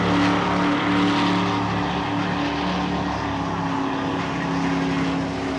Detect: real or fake real